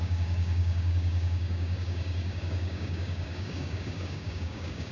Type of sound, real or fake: fake